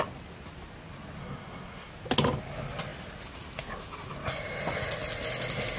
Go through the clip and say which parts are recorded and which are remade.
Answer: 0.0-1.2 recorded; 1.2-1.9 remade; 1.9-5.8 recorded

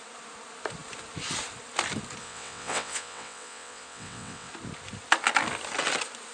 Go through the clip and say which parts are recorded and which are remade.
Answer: 0.0-2.2 recorded; 2.2-4.5 remade; 4.5-6.3 recorded

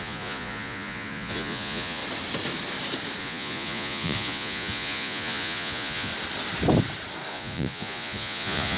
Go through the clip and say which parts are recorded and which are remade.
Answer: 0.0-2.0 remade; 2.0-3.2 recorded; 3.2-6.1 remade; 6.1-7.3 recorded; 7.3-8.8 remade

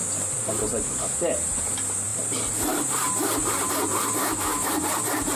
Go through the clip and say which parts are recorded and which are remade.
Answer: 0.0-4.2 recorded; 4.2-4.7 remade; 4.7-5.4 recorded

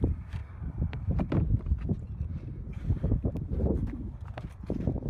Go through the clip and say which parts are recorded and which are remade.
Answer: 0.0-5.1 remade

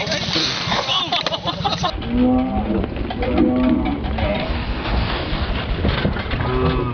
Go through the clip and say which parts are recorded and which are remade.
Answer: 0.0-0.4 recorded; 0.4-1.0 remade; 1.0-4.4 recorded; 4.4-5.5 remade; 5.5-6.9 recorded

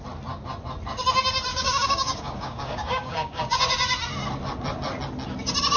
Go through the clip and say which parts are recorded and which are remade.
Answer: 0.0-1.5 recorded; 1.5-3.4 remade; 3.4-5.8 recorded